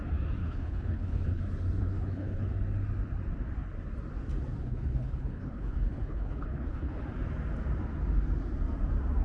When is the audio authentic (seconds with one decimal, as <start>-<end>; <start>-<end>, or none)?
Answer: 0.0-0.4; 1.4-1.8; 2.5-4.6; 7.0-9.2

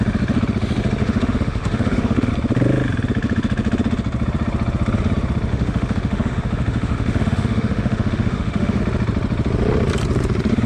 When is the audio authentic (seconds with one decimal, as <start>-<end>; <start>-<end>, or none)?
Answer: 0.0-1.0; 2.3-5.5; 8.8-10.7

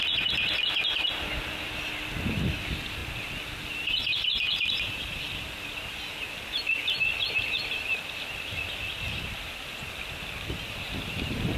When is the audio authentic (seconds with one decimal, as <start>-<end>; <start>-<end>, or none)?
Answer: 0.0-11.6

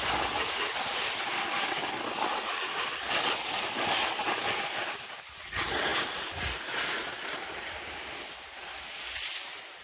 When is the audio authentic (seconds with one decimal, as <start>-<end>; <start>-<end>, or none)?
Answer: 0.0-9.8